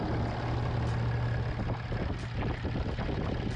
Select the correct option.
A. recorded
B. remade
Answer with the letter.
A